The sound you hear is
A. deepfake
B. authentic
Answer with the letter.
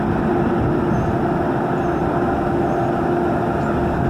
B